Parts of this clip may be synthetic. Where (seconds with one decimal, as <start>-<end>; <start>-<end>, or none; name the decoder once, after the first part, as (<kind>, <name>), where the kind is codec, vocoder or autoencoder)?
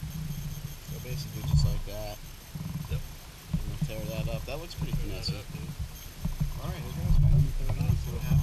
none